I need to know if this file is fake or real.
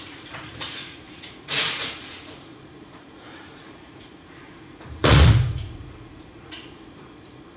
fake